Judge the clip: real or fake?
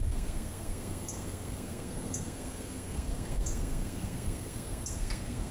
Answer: fake